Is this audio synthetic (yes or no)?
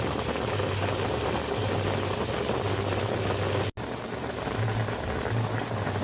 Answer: no